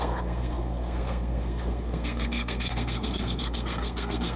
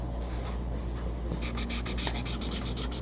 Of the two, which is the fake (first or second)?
first